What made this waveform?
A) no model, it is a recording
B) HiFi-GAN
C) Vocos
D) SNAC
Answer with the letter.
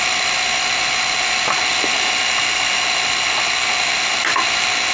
A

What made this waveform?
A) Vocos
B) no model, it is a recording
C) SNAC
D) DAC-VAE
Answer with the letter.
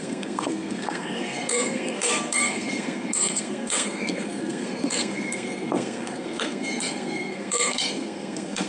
C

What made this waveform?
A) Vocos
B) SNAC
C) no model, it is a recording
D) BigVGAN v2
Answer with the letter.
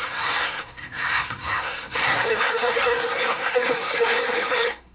B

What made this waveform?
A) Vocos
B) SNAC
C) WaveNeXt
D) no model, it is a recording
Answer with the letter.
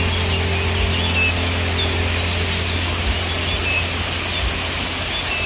D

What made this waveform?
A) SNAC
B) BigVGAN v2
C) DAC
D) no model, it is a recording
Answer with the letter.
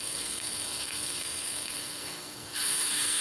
A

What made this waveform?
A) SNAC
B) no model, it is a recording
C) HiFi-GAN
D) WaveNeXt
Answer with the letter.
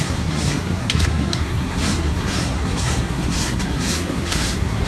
A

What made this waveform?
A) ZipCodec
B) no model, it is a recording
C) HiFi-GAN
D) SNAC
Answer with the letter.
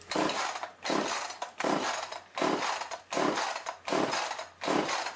B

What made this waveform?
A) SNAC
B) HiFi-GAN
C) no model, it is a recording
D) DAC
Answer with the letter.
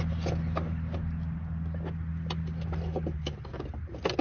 C